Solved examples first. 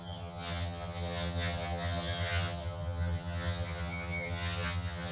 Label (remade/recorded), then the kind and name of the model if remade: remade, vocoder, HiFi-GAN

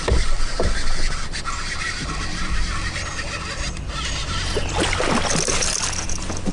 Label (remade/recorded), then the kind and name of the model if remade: recorded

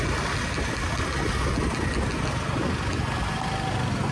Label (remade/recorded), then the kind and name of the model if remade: recorded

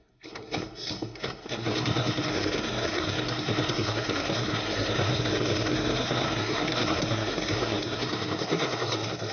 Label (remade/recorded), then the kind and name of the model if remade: remade, codec, SNAC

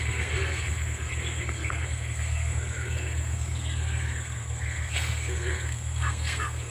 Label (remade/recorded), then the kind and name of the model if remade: remade, codec, SNAC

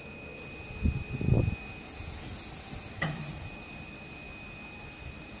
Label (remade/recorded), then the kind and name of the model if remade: recorded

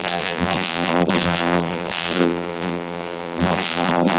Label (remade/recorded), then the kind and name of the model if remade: remade, vocoder, BigVGAN v2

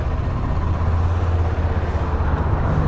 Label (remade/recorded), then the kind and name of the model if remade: recorded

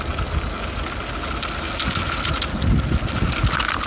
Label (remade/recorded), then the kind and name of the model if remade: recorded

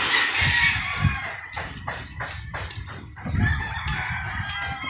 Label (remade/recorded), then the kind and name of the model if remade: recorded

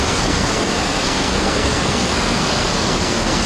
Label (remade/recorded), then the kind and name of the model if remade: remade, codec, SNAC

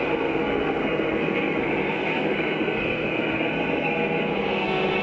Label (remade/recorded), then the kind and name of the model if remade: remade, codec, SNAC